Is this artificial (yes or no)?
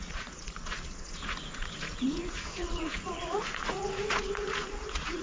yes